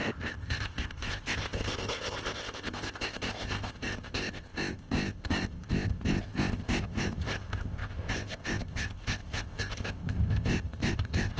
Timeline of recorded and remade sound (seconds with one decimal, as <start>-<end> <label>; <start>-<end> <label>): 0.0-11.4 remade

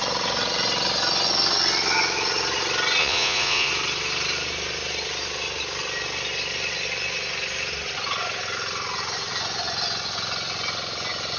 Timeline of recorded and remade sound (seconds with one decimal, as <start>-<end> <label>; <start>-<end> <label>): 0.0-3.0 recorded; 3.0-3.7 remade; 3.7-11.4 recorded

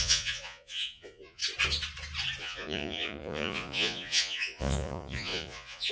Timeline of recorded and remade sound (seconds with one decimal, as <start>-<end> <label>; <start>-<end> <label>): 0.0-1.4 remade; 1.4-2.4 recorded; 2.4-5.9 remade

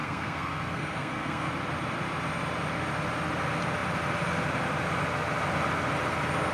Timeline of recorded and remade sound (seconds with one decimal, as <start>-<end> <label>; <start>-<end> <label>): 0.0-1.5 remade; 1.5-6.5 recorded

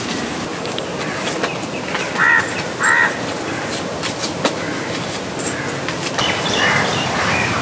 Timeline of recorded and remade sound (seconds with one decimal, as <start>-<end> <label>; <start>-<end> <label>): 0.0-7.6 recorded

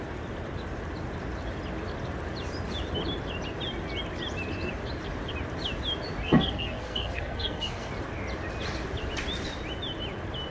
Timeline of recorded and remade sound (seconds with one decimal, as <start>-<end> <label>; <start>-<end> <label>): 0.0-6.2 recorded; 6.2-7.9 remade; 7.9-10.5 recorded

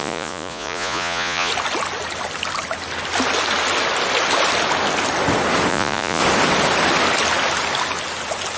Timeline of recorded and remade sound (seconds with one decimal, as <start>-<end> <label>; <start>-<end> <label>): 0.0-1.5 remade; 1.5-5.7 recorded; 5.7-6.2 remade; 6.2-8.6 recorded

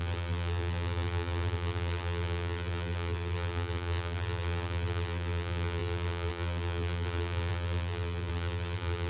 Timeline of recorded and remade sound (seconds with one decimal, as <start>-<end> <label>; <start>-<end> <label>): 0.0-9.1 remade